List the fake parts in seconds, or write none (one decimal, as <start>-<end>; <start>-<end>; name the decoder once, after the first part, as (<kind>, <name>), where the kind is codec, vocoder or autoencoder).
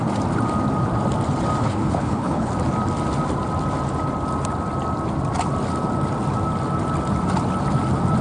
1.6-2.5 (codec, HILCodec)